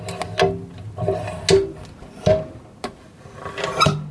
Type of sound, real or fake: real